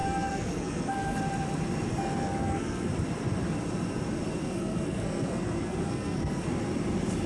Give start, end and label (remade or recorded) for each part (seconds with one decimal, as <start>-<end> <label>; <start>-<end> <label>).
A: 0.0-1.2 remade; 1.2-1.9 recorded; 1.9-2.9 remade; 2.9-4.4 recorded; 4.4-6.5 remade; 6.5-7.3 recorded